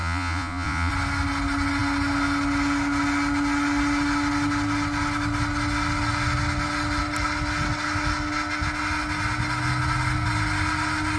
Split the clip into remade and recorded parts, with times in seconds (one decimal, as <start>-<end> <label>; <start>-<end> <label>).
0.0-0.9 remade; 0.9-11.2 recorded

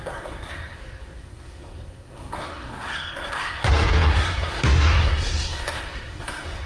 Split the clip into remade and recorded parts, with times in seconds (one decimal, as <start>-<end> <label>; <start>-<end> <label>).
0.0-6.7 remade

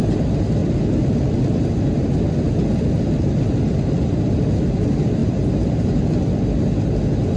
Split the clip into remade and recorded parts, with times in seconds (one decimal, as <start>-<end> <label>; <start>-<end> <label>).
0.0-5.2 recorded; 5.2-6.0 remade; 6.0-7.4 recorded